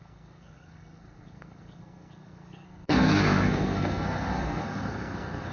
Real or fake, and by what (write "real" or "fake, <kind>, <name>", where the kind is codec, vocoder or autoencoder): fake, codec, SNAC